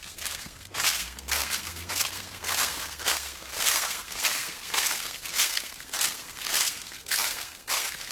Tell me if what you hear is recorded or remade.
remade